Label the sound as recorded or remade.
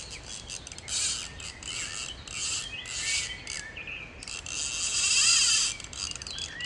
recorded